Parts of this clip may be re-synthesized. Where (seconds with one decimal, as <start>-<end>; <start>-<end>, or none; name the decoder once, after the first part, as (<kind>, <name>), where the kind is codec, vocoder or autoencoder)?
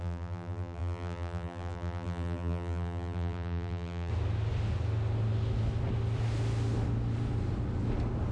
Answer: 0.0-4.1 (vocoder, BigVGAN v2)